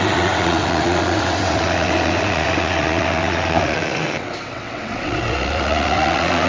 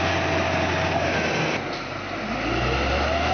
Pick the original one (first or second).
second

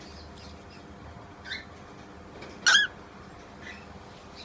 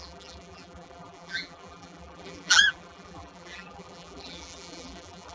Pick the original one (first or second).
first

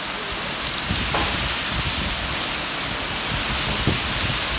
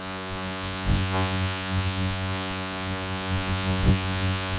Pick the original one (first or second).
first